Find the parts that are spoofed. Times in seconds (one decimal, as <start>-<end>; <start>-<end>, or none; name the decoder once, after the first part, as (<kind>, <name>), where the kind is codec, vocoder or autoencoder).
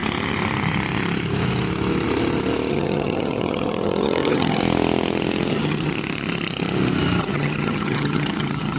2.7-4.6 (vocoder, HiFi-GAN); 5.5-5.9; 7.2-8.8